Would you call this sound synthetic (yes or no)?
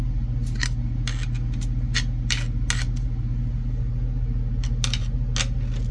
no